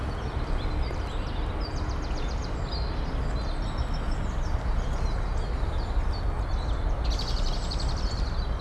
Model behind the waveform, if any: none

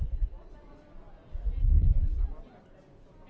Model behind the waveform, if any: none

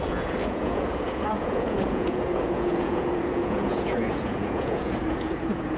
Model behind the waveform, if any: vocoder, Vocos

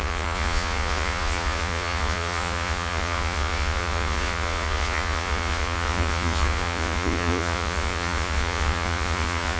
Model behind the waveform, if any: vocoder, Vocos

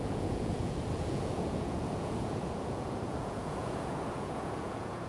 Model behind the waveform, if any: vocoder, Vocos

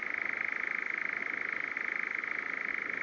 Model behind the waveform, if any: none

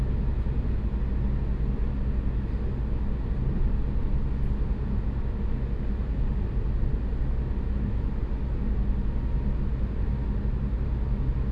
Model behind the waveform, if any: none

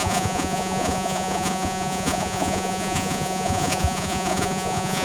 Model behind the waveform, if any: vocoder, Vocos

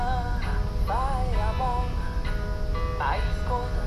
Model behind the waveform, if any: none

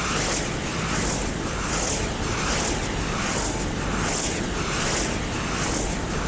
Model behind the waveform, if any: none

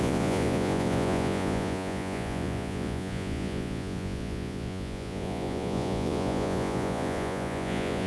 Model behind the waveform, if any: vocoder, Vocos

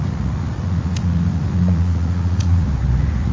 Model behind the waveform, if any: vocoder, Vocos